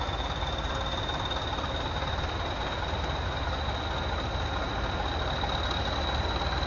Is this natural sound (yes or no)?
yes